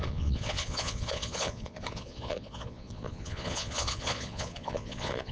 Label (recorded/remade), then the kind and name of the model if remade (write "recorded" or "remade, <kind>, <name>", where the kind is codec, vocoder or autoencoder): remade, vocoder, Vocos